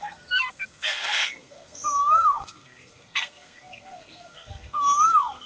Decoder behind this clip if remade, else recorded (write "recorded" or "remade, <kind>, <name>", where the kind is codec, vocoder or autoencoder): remade, codec, SNAC